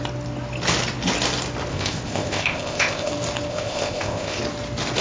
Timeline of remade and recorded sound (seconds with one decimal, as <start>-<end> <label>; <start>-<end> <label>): 0.0-1.7 recorded; 1.7-3.1 remade; 3.1-3.5 recorded; 3.5-4.4 remade; 4.4-5.0 recorded